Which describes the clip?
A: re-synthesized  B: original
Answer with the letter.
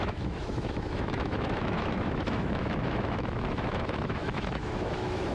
A